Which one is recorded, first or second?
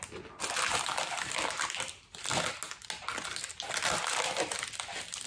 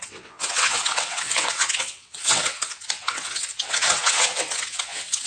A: first